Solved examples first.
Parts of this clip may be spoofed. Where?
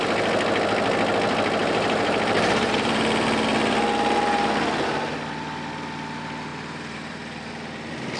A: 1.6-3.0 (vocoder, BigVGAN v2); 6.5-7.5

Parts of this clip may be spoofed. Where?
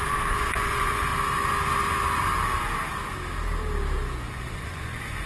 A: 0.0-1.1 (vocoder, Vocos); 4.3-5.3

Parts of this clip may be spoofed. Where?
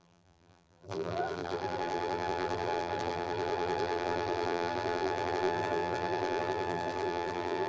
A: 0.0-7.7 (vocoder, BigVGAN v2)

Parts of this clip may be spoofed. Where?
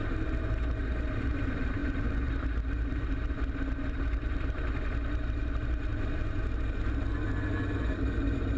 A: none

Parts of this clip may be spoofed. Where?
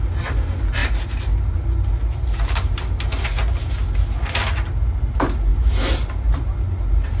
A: none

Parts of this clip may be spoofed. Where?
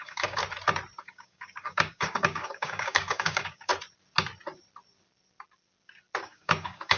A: 0.0-0.4 (codec, DAC); 1.0-3.7; 6.2-7.0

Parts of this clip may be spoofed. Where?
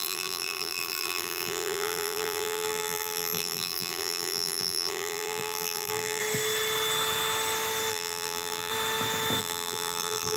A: 0.0-6.2 (vocoder, BigVGAN v2); 7.9-8.7; 9.4-10.4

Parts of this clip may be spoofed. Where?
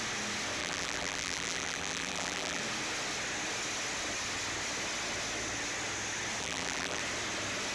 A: 0.6-2.6 (vocoder, BigVGAN v2); 6.4-7.0